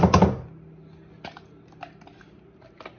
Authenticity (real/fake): real